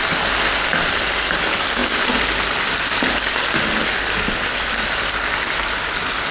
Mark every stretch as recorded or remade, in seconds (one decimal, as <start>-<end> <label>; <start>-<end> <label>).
0.0-6.3 recorded